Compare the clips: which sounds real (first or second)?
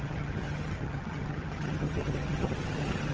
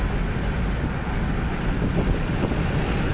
second